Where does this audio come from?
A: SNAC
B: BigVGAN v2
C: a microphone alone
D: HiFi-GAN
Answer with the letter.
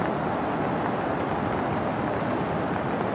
C